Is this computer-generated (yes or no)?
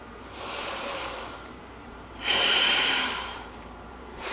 yes